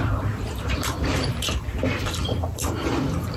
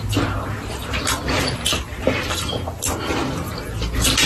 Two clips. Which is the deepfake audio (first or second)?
first